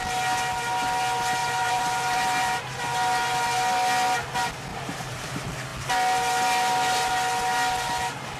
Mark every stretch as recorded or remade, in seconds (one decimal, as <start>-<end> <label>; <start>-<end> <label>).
0.0-1.4 recorded; 1.4-2.6 remade; 2.6-4.7 recorded; 4.7-5.3 remade; 5.3-8.4 recorded